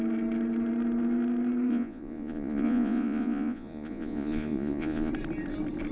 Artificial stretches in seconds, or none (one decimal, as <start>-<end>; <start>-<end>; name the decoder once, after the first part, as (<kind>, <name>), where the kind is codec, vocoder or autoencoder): 1.7-5.1 (vocoder, Vocos)